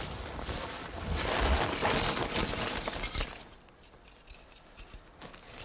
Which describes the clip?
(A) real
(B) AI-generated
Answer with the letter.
A